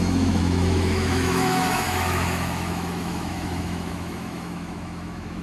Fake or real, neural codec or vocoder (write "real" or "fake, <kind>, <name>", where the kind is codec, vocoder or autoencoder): fake, autoencoder, DAC-VAE